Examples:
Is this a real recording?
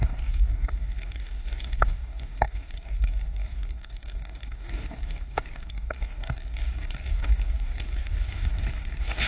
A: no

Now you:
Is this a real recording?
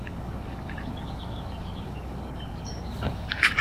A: no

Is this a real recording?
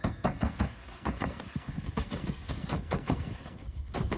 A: no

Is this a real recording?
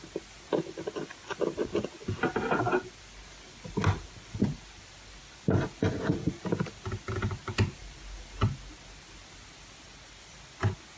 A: yes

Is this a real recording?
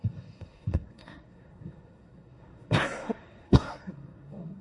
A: no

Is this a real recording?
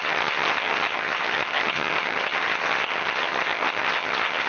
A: no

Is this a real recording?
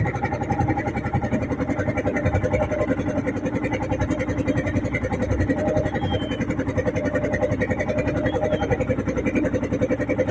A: yes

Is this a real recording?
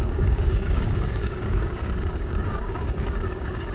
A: no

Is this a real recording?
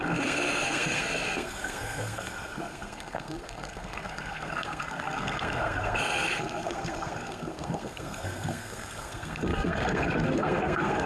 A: no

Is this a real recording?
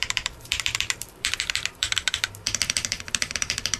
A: no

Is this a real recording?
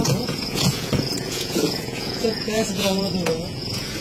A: no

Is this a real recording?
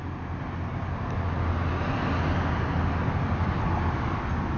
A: yes